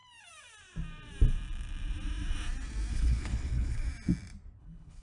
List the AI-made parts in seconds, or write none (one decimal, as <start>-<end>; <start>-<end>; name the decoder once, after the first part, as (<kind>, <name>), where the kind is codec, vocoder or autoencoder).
2.9-3.8 (codec, HILCodec); 4.6-5.0